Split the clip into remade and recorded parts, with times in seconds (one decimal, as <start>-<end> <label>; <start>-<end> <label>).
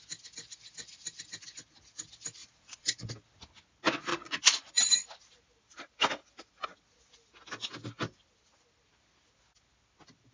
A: 0.0-2.4 recorded; 2.4-3.1 remade; 3.1-4.1 recorded; 4.1-4.7 remade; 4.7-10.3 recorded